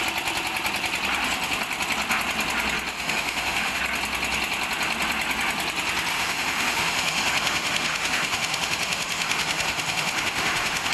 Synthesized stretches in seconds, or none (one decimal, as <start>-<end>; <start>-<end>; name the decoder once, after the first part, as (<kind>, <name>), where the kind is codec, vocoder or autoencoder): 2.9-3.8 (autoencoder, DAC-VAE); 6.1-10.9